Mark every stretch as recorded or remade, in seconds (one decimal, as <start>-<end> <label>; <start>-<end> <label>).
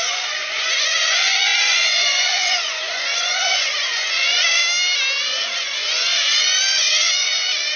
0.0-4.6 remade; 4.6-5.2 recorded; 5.2-7.8 remade